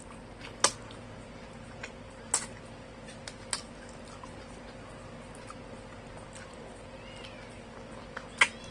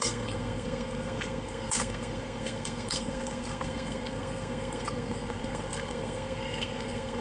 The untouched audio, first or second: first